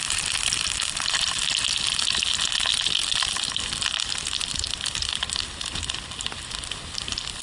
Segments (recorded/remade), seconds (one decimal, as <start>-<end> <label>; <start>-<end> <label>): 0.0-1.5 remade; 1.5-3.0 recorded; 3.0-6.9 remade; 6.9-7.4 recorded